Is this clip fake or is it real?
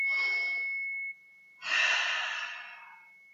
real